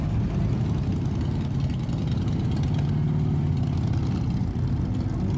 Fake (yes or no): no